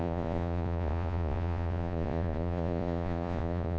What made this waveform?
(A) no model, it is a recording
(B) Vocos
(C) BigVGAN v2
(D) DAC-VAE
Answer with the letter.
B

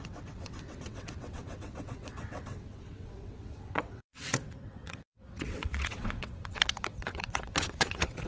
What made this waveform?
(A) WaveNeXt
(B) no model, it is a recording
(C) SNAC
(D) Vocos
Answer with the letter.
A